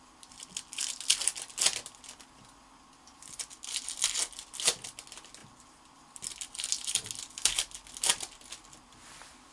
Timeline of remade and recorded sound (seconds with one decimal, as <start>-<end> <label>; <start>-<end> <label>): 0.0-9.5 recorded